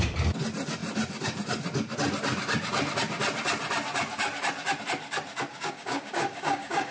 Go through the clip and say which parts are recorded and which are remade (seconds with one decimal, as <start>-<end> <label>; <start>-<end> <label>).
0.0-5.5 recorded; 5.5-6.9 remade